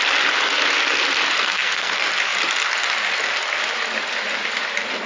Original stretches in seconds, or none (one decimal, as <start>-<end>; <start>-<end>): 0.0-1.4; 1.9-5.1